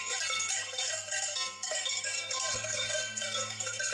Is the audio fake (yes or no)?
yes